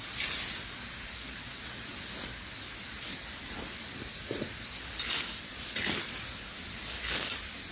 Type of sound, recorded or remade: recorded